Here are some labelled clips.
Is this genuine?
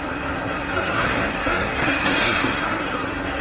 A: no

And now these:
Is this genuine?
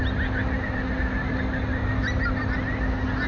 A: yes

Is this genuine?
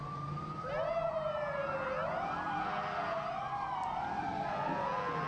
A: yes